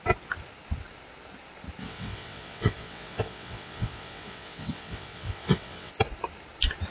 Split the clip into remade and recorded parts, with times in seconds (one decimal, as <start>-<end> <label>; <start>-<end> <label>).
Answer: 0.0-1.8 recorded; 1.8-5.9 remade; 5.9-6.9 recorded